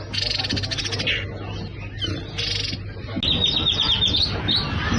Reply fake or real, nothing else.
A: real